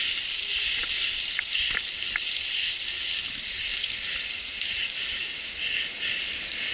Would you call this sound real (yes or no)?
yes